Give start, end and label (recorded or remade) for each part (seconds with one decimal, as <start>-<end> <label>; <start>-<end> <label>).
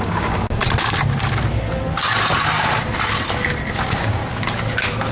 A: 0.0-0.6 remade; 0.6-3.7 recorded; 3.7-4.2 remade; 4.2-5.1 recorded